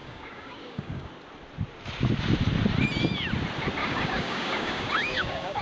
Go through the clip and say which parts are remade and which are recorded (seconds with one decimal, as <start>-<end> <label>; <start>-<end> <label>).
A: 0.0-1.1 remade; 1.1-3.8 recorded; 3.8-5.6 remade

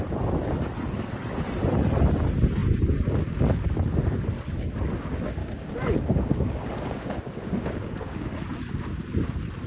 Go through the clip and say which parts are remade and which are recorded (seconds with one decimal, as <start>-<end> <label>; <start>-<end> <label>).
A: 0.0-5.4 recorded; 5.4-8.3 remade; 8.3-9.7 recorded

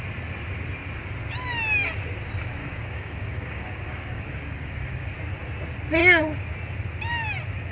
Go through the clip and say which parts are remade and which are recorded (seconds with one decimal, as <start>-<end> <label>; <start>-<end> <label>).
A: 0.0-2.6 recorded; 2.6-5.1 remade; 5.1-7.7 recorded

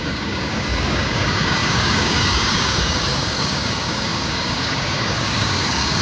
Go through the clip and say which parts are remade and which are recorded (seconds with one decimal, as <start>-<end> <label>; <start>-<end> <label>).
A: 0.0-6.0 remade

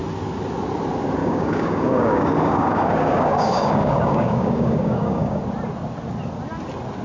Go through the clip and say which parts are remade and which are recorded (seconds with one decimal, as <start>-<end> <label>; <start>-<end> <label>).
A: 0.0-1.2 recorded; 1.2-5.4 remade; 5.4-7.0 recorded

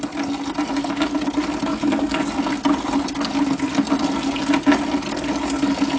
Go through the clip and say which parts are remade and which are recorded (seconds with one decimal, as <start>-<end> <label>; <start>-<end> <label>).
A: 0.0-1.7 recorded; 1.7-2.4 remade; 2.4-6.0 recorded